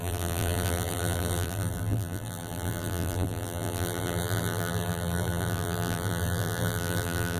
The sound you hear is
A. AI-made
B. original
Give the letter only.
A